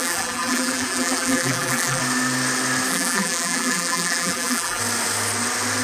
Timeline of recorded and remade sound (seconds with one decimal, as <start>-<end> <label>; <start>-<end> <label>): 0.0-2.0 remade; 2.0-2.9 recorded; 2.9-4.8 remade; 4.8-5.8 recorded